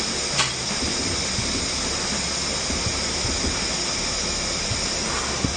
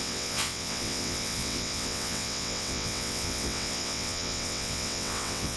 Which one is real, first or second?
first